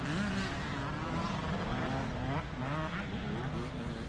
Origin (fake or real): real